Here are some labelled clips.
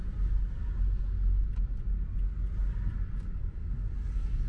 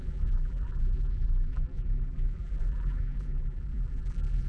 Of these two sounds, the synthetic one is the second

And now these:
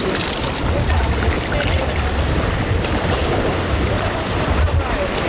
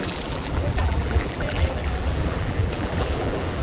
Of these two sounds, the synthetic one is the second